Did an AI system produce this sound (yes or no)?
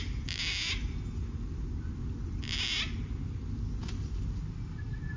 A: no